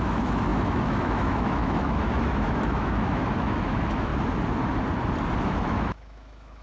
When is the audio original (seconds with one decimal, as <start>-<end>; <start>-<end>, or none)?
4.1-5.4